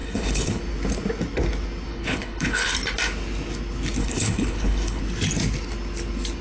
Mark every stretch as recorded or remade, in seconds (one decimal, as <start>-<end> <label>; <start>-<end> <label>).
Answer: 0.0-0.6 remade; 0.6-1.9 recorded; 1.9-2.7 remade; 2.7-4.0 recorded; 4.0-5.0 remade; 5.0-6.4 recorded